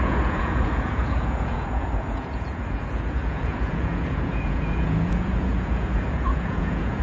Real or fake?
fake